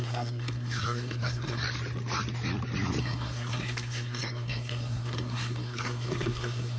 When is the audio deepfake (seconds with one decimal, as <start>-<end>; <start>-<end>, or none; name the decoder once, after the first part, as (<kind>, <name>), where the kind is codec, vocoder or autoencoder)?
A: 0.0-1.6 (codec, SNAC); 3.0-6.8